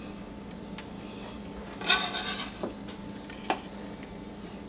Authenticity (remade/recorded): recorded